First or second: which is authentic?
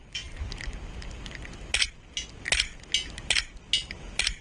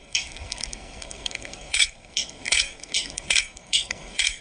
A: first